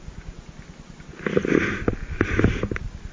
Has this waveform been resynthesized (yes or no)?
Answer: no